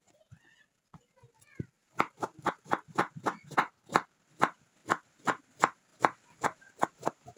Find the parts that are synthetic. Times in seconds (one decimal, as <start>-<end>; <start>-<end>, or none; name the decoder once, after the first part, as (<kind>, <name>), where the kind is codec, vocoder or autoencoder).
1.8-2.5 (vocoder, BigVGAN v2); 4.8-5.4; 5.9-7.4